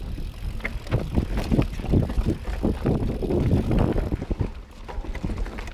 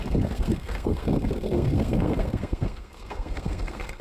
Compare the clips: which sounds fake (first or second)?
second